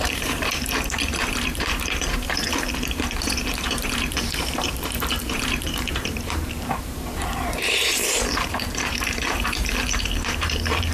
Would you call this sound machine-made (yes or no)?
yes